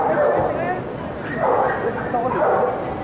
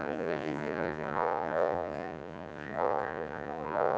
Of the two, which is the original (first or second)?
first